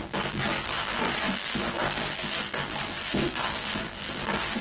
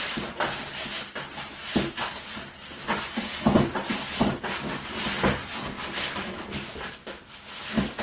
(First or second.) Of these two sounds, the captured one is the second